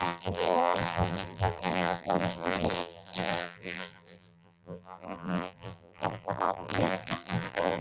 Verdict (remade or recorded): remade